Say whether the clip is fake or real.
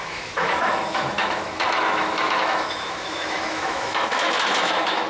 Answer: fake